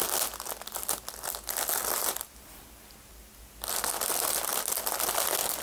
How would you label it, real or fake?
real